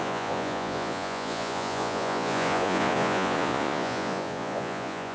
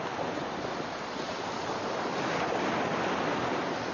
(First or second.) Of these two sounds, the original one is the second